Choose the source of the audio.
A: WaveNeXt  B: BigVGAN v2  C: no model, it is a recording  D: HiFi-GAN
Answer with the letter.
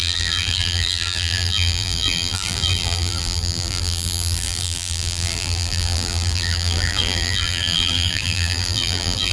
B